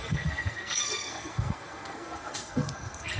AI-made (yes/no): yes